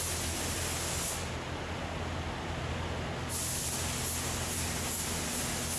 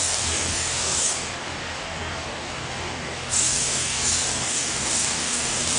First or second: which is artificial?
second